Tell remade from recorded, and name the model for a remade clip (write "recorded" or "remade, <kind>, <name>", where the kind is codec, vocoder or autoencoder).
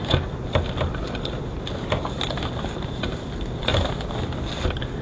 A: recorded